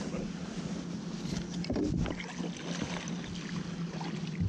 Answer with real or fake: real